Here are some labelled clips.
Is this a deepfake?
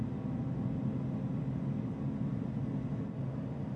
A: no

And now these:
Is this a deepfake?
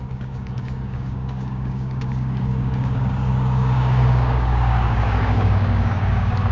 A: yes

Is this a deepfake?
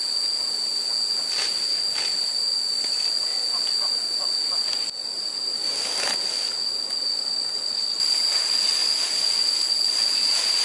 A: no